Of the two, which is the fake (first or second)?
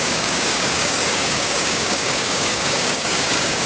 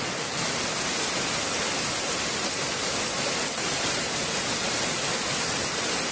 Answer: first